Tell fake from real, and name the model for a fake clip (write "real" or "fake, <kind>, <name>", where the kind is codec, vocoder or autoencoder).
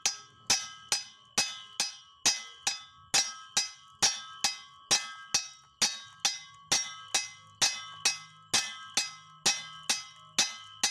real